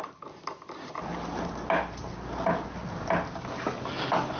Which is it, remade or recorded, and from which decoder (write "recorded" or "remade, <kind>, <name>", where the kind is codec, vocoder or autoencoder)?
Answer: recorded